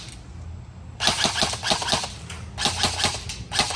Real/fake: real